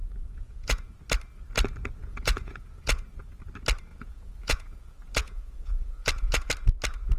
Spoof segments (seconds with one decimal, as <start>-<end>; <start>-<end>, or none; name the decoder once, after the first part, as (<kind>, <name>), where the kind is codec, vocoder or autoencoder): 0.0-0.9 (vocoder, Vocos); 2.0-3.0; 3.9-6.5